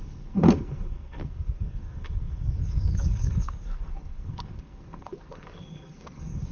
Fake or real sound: fake